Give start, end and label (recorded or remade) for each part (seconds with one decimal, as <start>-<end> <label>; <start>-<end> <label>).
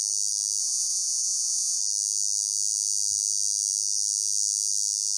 0.0-0.6 recorded; 0.6-1.8 remade; 1.8-5.2 recorded